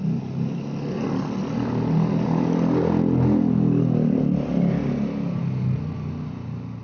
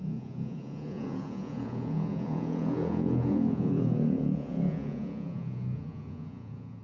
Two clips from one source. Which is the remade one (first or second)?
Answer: second